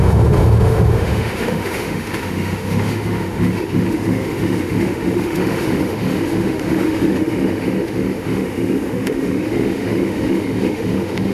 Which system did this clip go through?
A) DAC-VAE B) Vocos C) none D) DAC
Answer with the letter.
A